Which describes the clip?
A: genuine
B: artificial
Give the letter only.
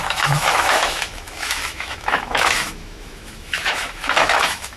B